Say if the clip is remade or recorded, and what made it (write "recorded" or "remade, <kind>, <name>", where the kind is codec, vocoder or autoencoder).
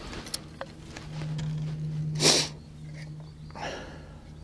recorded